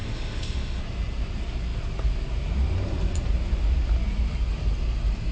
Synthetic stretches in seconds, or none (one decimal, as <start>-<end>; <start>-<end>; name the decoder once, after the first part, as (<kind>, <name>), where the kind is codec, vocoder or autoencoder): 0.0-0.8 (autoencoder, DAC-VAE)